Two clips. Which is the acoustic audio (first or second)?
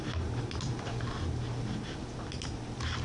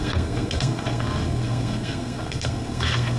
first